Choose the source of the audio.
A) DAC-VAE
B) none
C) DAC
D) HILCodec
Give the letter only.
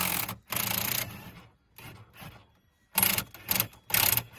B